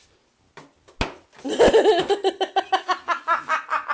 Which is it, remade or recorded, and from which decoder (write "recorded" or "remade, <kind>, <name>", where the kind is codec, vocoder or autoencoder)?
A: recorded